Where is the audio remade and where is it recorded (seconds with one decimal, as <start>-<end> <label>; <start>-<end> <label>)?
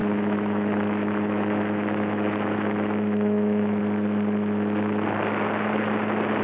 0.0-3.8 remade; 3.8-6.4 recorded